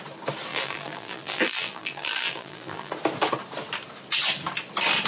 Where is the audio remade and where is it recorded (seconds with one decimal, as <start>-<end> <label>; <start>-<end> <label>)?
0.0-0.5 recorded; 0.5-2.9 remade; 2.9-5.1 recorded

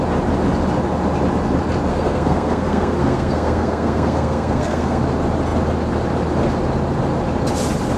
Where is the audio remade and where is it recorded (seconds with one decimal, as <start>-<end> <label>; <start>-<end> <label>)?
0.0-1.9 recorded; 1.9-5.0 remade; 5.0-8.0 recorded

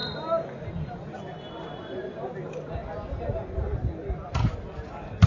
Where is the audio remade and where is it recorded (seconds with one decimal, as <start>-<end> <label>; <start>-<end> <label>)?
0.0-5.3 recorded

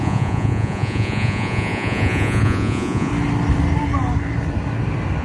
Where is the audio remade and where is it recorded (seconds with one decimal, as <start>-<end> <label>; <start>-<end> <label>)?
0.0-3.1 remade; 3.1-5.2 recorded